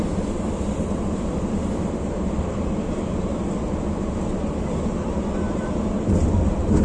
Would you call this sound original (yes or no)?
yes